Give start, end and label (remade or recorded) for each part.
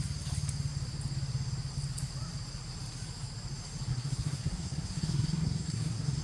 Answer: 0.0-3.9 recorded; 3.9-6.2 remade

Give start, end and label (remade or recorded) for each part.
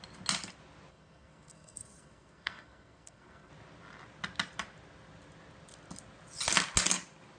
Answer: 0.0-0.9 recorded; 0.9-3.5 remade; 3.5-7.4 recorded